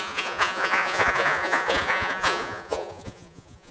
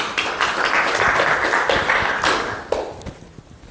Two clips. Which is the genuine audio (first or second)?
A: second